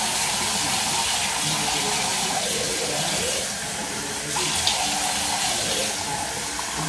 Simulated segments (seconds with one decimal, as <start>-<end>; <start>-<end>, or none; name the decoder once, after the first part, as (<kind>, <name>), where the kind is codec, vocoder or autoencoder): none